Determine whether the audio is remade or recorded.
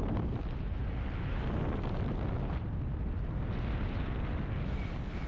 recorded